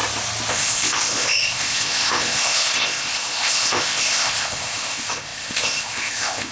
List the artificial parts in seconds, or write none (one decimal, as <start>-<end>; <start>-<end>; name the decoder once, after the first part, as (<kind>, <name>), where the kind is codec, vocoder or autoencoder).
0.5-6.5 (codec, ZipCodec)